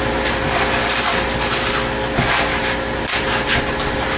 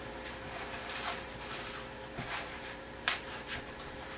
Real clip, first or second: first